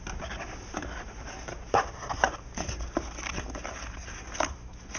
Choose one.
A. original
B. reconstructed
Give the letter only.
A